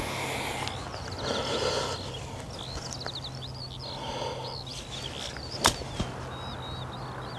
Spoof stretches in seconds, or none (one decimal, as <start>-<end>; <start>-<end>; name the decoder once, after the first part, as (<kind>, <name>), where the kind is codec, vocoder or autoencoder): none